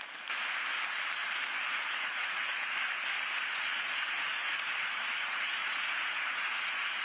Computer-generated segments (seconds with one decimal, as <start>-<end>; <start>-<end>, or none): 1.7-2.6; 4.4-7.0